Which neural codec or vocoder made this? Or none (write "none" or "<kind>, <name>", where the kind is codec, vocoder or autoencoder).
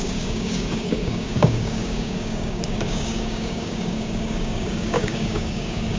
codec, DAC